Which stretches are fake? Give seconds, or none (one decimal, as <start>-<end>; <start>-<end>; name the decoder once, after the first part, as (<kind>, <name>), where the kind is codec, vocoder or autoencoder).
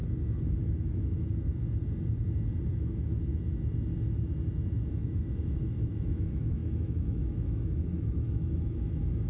0.7-1.5 (autoencoder, DAC-VAE); 2.6-3.3; 4.9-9.3